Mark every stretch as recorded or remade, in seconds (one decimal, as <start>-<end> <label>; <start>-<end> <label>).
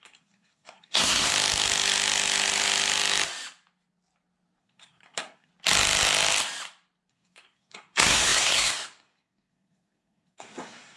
0.0-1.3 remade; 1.3-4.6 recorded; 4.6-5.5 remade; 5.5-7.1 recorded; 7.1-11.0 remade